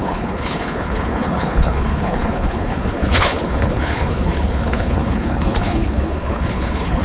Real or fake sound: fake